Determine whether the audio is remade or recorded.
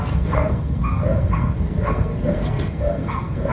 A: remade